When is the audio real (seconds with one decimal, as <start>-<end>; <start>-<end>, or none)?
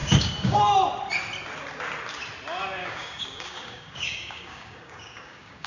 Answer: 0.6-2.8